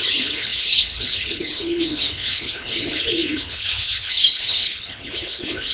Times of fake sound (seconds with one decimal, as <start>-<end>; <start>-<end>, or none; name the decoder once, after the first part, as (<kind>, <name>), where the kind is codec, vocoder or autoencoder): 0.0-5.7 (codec, HILCodec)

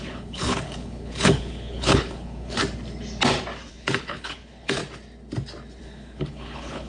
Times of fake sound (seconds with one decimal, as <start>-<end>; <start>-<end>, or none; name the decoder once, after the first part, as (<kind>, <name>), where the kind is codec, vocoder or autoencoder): 0.0-2.6 (codec, HILCodec); 3.7-4.8; 5.8-6.9

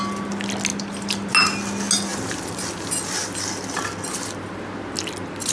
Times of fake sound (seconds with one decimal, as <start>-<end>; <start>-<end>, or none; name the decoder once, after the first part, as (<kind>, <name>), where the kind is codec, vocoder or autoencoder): none

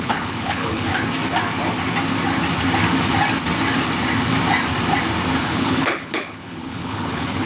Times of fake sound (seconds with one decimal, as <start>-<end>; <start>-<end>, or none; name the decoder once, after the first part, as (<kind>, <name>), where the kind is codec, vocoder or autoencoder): 0.0-0.9 (codec, HILCodec); 5.4-7.5

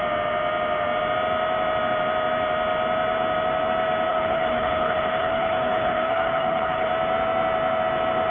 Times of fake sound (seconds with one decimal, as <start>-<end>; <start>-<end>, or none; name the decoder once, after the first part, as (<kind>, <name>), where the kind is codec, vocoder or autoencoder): 4.1-6.9 (codec, HILCodec)

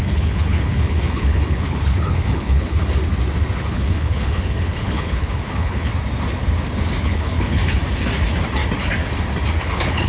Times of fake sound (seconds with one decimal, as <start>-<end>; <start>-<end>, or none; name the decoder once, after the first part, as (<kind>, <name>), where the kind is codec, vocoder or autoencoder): 0.0-3.0 (codec, HILCodec); 3.7-5.9; 7.0-7.8; 9.6-10.1

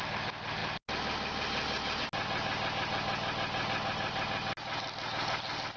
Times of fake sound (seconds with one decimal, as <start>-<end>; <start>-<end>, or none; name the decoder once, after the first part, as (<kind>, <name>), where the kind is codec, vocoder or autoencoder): none

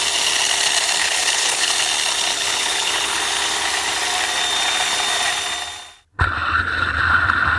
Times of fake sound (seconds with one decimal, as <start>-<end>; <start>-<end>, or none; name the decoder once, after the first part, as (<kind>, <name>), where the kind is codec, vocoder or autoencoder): 1.0-1.7 (codec, HILCodec); 2.3-3.2